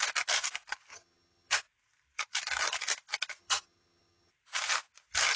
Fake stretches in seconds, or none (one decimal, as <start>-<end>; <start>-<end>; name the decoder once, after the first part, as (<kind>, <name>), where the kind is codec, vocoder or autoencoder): 0.9-1.6 (vocoder, HiFi-GAN); 3.4-4.3